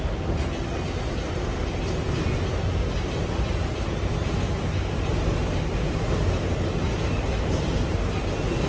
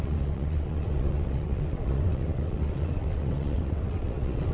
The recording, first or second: first